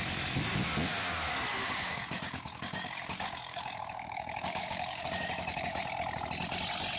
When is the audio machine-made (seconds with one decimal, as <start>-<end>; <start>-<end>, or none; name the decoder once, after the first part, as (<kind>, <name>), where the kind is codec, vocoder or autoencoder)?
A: 1.6-5.8 (codec, DAC)